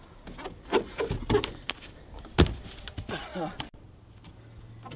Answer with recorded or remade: recorded